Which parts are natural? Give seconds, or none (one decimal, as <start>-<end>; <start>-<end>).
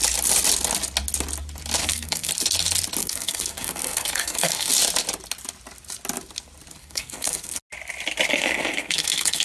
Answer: 0.0-1.8; 2.3-3.0; 4.7-6.8; 7.6-8.3